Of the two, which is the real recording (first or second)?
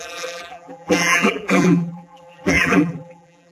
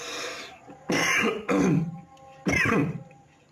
second